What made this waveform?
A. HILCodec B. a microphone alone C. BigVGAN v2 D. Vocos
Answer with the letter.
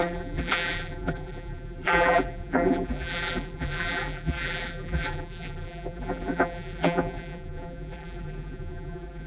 C